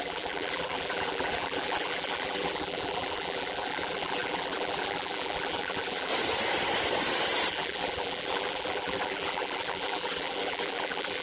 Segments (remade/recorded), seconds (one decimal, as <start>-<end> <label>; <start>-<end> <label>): 0.0-6.1 remade; 6.1-7.5 recorded; 7.5-11.2 remade